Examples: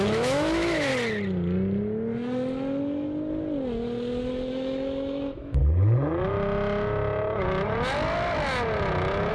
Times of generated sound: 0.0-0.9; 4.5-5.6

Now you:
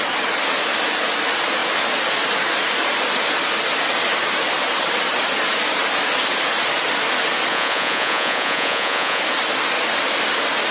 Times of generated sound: 7.5-9.2

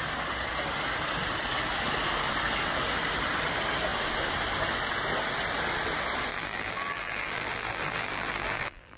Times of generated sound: 6.3-9.0